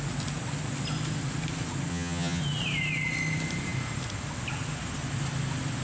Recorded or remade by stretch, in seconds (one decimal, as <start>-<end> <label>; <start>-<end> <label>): 0.0-1.9 recorded; 1.9-2.4 remade; 2.4-5.8 recorded